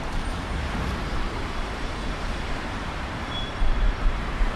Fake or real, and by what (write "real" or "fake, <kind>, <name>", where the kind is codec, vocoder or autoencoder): fake, vocoder, BigVGAN v2